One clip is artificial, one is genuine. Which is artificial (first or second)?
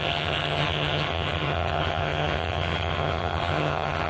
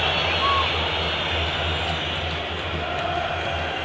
first